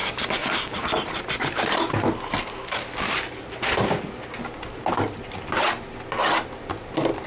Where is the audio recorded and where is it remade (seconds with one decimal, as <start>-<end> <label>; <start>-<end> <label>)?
0.0-0.9 remade; 0.9-7.3 recorded